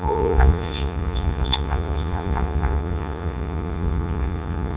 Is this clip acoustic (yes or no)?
no